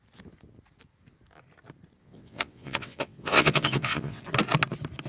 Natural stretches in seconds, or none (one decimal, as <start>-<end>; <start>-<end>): 0.0-2.0; 4.2-5.1